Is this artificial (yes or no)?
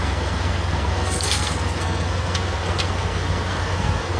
yes